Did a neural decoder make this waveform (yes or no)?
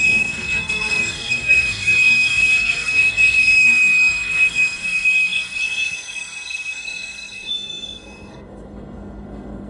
yes